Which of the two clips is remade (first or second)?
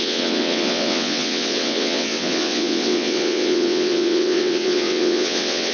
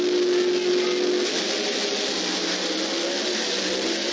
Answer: first